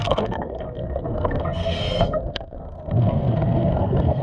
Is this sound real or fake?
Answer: fake